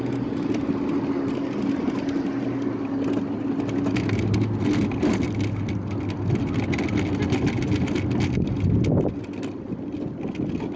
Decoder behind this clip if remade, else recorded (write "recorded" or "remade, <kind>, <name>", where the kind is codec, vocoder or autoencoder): recorded